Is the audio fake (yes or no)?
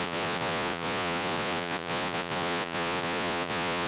yes